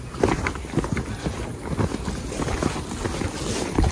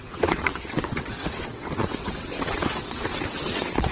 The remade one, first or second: second